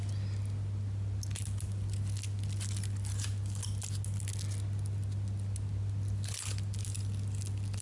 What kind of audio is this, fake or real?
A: real